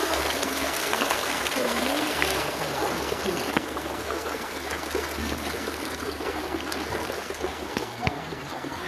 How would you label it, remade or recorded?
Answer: remade